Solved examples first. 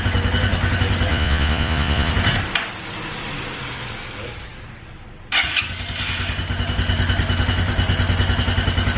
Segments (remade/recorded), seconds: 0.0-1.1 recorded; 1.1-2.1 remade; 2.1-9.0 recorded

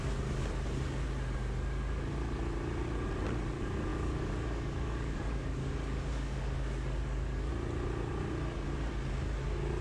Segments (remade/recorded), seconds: 0.0-3.9 recorded; 3.9-7.5 remade; 7.5-9.8 recorded

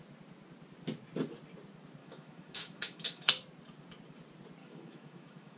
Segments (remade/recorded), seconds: 0.0-2.0 recorded; 2.0-3.3 remade; 3.3-4.6 recorded; 4.6-5.6 remade

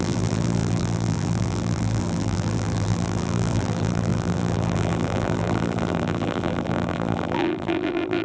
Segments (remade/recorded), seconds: 0.0-8.2 remade

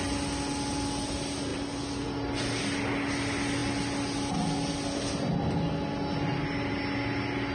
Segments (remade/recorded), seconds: 0.0-7.5 recorded

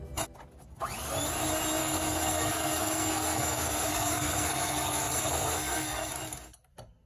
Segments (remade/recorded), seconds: 0.0-1.8 recorded; 1.8-6.1 remade; 6.1-7.1 recorded

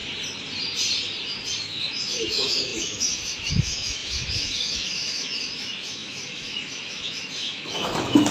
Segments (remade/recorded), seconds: 0.0-1.6 recorded; 1.6-8.3 remade